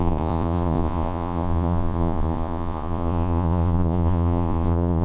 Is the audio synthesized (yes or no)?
yes